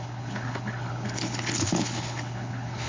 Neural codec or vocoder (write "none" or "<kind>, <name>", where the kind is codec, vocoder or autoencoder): codec, HILCodec